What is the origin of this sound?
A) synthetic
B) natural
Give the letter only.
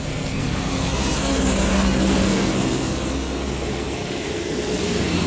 A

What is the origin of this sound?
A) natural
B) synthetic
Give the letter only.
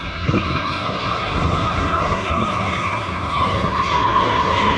B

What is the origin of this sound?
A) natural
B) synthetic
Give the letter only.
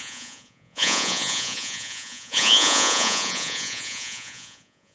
B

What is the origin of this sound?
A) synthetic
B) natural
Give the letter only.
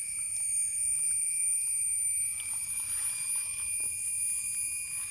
B